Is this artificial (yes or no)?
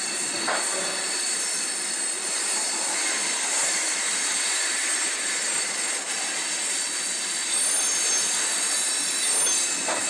no